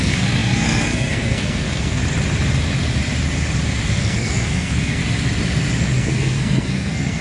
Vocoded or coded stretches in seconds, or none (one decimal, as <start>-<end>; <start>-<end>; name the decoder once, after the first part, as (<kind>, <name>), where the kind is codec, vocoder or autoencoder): 0.0-2.0 (codec, SNAC); 4.0-5.0; 5.8-7.2